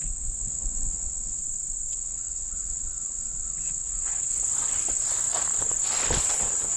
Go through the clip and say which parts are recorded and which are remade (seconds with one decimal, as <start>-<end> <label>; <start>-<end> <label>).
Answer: 0.0-1.4 remade; 1.4-1.9 recorded; 1.9-4.3 remade; 4.3-6.2 recorded; 6.2-6.8 remade